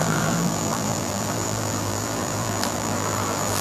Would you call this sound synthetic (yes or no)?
yes